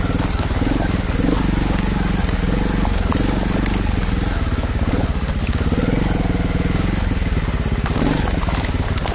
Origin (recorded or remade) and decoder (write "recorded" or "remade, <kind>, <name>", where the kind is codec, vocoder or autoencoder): recorded